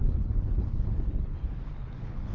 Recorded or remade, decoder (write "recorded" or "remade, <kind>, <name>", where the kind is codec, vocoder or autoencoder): remade, codec, HILCodec